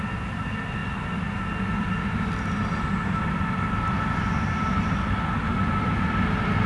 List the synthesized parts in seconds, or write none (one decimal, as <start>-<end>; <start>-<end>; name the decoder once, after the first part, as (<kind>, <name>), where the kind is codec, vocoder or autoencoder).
none